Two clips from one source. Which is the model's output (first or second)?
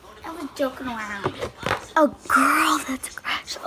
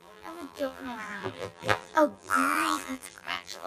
second